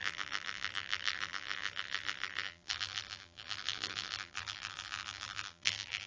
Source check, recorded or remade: remade